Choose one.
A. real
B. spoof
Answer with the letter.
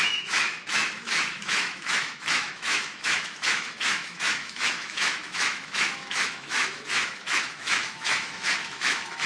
B